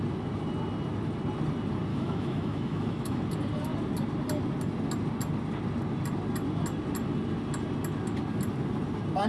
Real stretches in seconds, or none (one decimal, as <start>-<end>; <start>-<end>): 0.0-1.9; 3.2-9.3